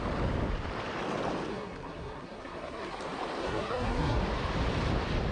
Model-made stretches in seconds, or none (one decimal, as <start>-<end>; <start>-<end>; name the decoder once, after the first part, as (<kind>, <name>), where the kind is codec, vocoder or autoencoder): 1.5-3.0 (codec, SNAC); 3.4-4.2